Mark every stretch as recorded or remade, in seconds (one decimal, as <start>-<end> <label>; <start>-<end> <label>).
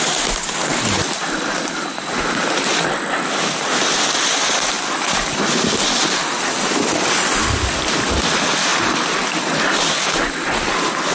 0.0-11.1 recorded